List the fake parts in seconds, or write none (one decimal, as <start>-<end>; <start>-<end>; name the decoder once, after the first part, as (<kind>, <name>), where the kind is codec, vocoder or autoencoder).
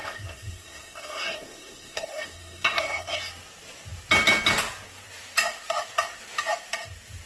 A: 0.0-3.2 (codec, SNAC)